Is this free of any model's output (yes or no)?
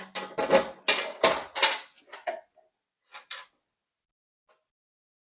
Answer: yes